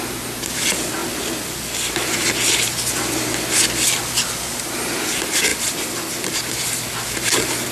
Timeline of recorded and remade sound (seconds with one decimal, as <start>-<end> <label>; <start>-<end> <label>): 0.0-7.7 recorded